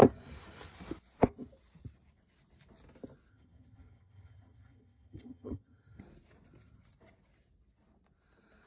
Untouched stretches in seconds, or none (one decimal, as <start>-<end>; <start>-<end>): 0.0-3.3; 6.0-8.7